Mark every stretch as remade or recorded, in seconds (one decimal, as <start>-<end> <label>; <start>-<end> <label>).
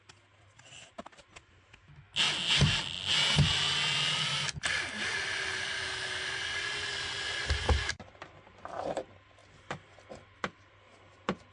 0.0-11.5 recorded